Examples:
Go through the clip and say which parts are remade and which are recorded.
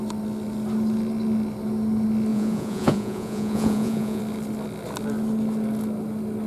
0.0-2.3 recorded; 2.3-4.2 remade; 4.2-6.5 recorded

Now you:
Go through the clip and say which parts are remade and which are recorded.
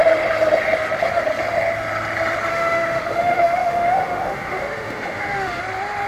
0.0-2.5 recorded; 2.5-5.6 remade; 5.6-6.1 recorded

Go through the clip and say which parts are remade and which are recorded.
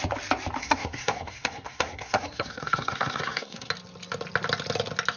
0.0-0.6 recorded; 0.6-3.7 remade; 3.7-5.2 recorded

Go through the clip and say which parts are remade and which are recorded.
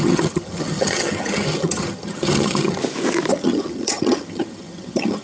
0.0-2.8 remade; 2.8-3.3 recorded; 3.3-5.2 remade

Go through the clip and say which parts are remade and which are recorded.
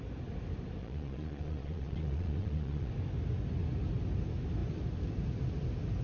0.0-0.8 recorded; 0.8-2.9 remade; 2.9-6.0 recorded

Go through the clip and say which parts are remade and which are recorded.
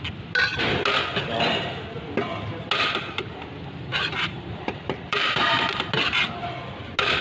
0.0-3.9 recorded; 3.9-5.5 remade; 5.5-7.2 recorded